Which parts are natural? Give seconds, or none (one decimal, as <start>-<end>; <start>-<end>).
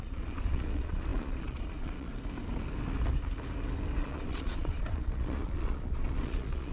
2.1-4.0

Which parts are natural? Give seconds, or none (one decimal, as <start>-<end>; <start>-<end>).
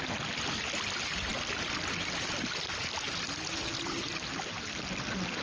0.0-5.4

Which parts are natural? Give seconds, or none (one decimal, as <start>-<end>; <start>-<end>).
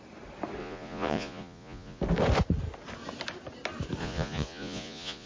0.0-0.6; 2.0-4.0